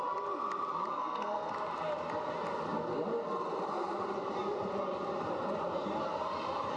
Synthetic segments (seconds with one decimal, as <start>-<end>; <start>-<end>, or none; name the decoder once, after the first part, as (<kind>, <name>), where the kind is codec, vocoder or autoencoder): 0.9-1.5 (codec, SNAC)